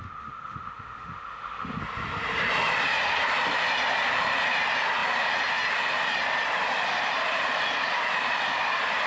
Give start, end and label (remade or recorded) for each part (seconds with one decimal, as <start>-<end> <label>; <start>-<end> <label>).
0.0-1.8 remade; 1.8-9.1 recorded